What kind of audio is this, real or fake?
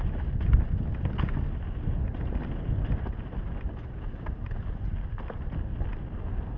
real